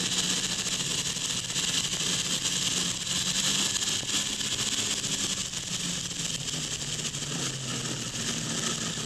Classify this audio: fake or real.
real